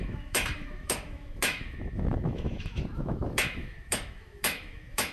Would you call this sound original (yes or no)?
no